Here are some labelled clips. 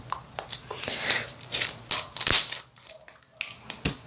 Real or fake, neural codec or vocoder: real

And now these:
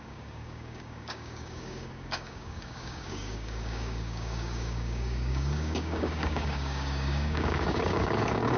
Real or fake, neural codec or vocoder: fake, codec, DAC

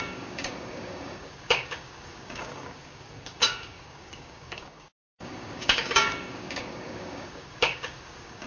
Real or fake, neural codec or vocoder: fake, codec, DAC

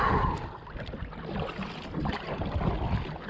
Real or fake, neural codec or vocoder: real